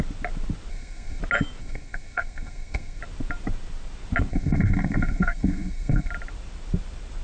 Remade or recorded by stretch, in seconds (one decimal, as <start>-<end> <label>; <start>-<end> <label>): 0.0-0.7 recorded; 0.7-1.2 remade; 1.2-1.6 recorded; 1.6-3.0 remade; 3.0-4.3 recorded; 4.3-6.1 remade; 6.1-7.2 recorded